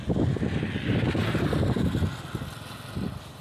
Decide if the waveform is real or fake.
real